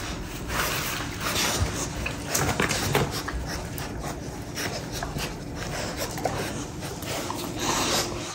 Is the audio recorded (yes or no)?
yes